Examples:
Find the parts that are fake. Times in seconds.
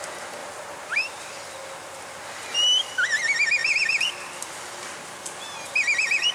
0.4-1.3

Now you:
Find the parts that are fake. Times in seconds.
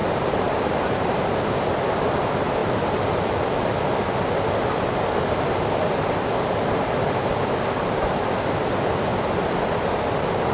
0.0-1.7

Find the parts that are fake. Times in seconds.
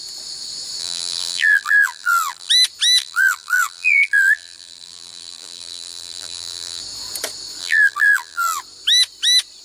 0.8-2.5; 3.0-6.8; 7.6-8.6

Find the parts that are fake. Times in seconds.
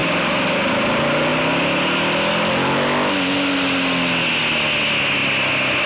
none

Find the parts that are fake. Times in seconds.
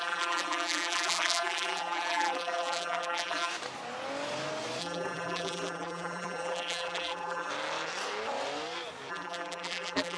0.0-3.5; 4.8-7.5; 9.1-10.2